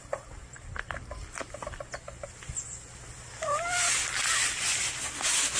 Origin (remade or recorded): recorded